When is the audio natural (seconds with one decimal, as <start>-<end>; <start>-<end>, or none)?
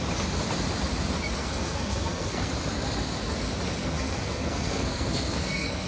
0.0-1.4; 2.5-3.8